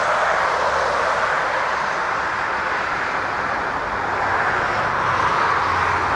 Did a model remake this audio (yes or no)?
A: no